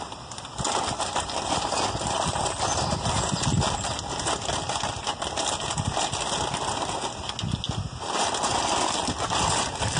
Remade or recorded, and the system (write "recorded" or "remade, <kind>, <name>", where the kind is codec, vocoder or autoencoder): recorded